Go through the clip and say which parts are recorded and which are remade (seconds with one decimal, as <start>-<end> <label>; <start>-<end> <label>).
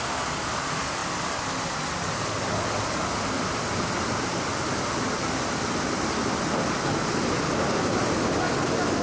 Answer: 0.0-9.0 recorded